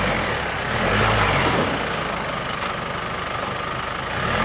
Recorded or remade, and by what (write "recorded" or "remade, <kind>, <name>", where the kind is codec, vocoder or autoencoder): recorded